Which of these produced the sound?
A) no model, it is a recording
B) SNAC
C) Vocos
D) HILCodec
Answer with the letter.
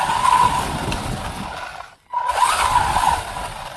A